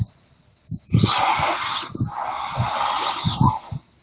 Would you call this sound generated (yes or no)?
no